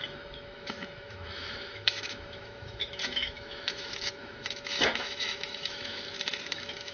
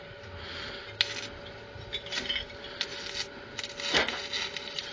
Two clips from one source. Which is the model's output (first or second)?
first